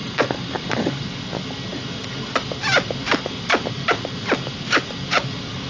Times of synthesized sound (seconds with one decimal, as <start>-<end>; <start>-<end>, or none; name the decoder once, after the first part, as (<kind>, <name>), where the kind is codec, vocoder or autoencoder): none

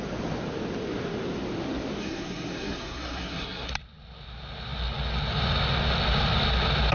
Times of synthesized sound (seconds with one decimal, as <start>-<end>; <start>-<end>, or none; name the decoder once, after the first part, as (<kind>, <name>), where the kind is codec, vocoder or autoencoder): 2.0-3.7 (codec, SNAC)

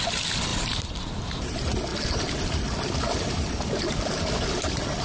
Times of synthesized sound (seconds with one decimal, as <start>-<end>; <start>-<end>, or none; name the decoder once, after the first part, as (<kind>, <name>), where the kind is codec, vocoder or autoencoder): none

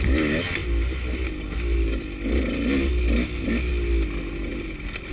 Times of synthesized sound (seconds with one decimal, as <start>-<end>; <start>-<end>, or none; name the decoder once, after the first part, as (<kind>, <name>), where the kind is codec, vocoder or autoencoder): none